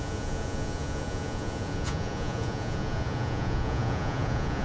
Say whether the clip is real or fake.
fake